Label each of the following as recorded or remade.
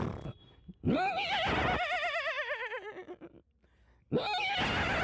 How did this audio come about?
recorded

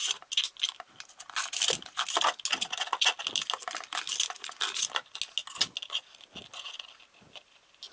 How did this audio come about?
recorded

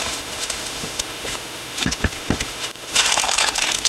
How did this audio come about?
remade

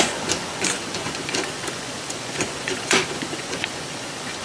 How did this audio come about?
remade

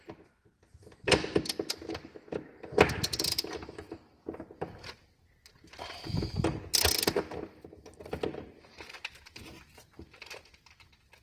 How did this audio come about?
recorded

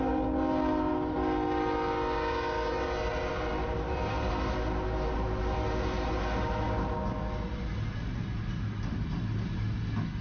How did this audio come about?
recorded